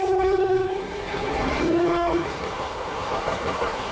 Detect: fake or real fake